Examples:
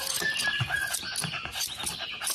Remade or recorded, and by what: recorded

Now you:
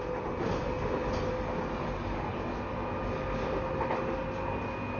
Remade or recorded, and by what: recorded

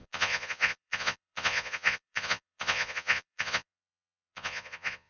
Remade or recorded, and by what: remade, vocoder, Vocos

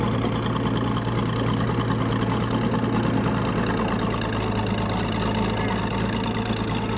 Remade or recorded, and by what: recorded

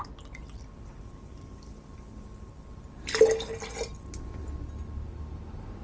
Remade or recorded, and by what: recorded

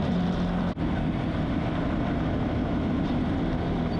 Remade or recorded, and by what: recorded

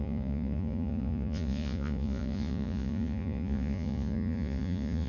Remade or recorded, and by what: remade, vocoder, Vocos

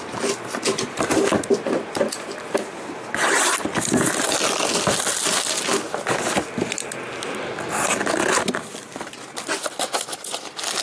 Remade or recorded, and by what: recorded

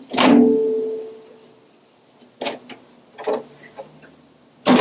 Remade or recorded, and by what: recorded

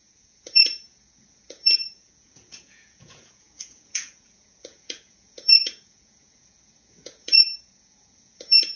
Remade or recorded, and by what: remade, vocoder, Vocos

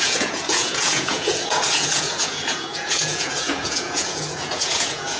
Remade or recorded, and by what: remade, vocoder, Vocos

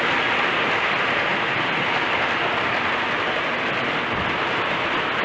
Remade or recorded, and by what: recorded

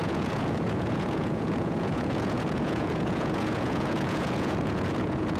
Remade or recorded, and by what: remade, vocoder, Vocos